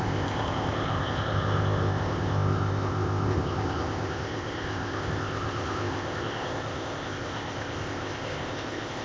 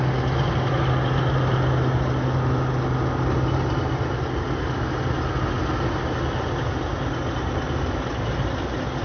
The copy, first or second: first